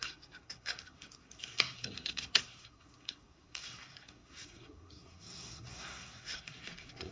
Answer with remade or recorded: remade